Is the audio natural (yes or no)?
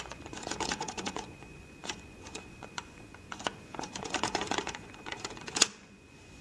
no